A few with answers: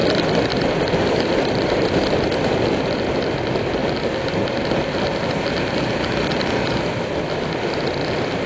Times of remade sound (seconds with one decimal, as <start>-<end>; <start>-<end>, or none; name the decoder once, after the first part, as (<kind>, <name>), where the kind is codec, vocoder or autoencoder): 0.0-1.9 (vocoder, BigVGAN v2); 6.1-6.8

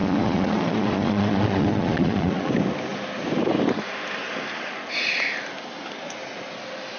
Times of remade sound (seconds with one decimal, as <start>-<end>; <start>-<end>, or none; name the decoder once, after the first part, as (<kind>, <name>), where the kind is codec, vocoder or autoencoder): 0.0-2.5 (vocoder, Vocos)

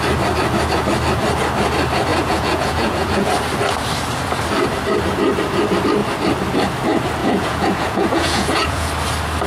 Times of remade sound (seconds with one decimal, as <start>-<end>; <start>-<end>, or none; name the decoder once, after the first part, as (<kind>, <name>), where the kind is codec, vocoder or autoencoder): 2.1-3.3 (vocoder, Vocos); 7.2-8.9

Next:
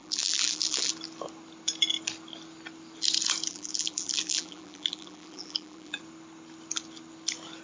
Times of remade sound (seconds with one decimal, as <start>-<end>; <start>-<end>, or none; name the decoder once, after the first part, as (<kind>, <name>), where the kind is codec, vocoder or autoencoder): 0.0-0.9 (vocoder, BigVGAN v2); 3.5-6.0